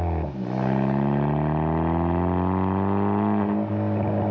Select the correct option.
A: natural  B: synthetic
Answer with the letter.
A